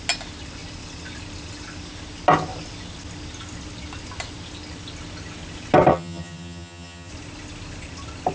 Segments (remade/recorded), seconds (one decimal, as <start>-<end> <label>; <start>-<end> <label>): 0.0-5.9 recorded; 5.9-7.1 remade; 7.1-8.3 recorded